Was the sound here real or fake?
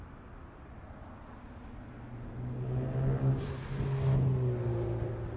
real